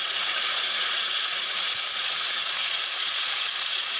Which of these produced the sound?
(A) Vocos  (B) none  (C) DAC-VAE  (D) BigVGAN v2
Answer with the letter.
A